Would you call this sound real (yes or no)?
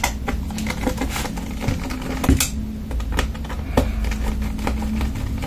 yes